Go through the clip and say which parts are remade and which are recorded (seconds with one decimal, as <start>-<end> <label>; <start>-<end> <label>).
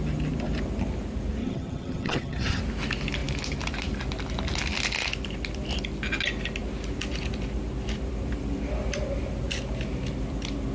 0.0-1.4 recorded; 1.4-2.6 remade; 2.6-10.7 recorded